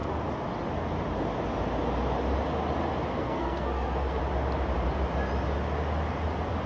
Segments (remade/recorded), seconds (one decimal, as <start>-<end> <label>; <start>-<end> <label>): 0.0-3.1 recorded; 3.1-4.2 remade; 4.2-6.7 recorded